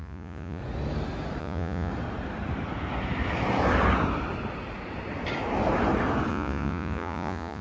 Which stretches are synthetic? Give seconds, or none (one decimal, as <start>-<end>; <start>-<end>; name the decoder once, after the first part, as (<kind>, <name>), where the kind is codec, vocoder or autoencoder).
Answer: 0.0-0.6 (vocoder, Vocos); 1.4-1.9; 6.3-7.6